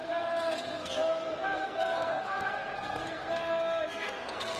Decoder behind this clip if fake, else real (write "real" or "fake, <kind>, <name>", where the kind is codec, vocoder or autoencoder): fake, codec, SNAC